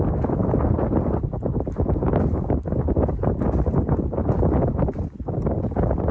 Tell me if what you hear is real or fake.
real